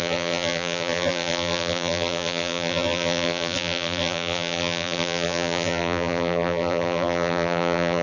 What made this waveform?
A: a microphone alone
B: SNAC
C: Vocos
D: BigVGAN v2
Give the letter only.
D